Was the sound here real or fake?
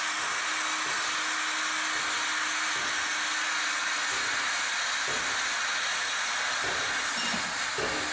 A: real